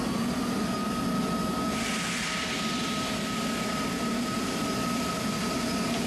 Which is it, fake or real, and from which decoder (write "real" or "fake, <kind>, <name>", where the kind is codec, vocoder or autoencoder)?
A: fake, vocoder, BigVGAN v2